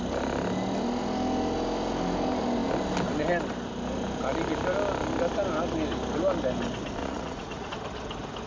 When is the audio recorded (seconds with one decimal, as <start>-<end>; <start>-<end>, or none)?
0.0-7.0; 7.7-8.5